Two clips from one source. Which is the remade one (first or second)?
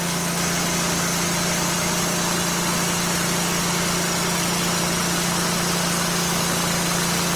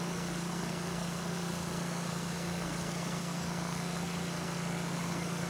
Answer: second